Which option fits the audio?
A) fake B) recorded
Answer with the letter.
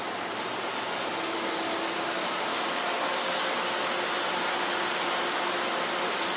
B